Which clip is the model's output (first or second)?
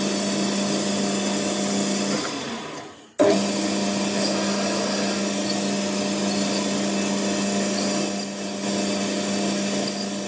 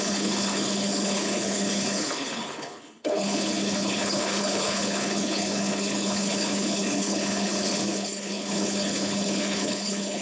second